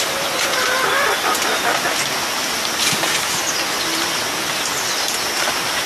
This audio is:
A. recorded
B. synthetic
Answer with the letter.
A